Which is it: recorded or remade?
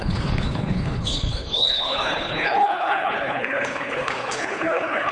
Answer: remade